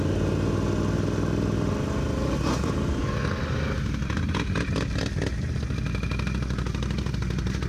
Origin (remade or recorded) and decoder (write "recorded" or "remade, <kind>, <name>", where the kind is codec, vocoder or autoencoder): recorded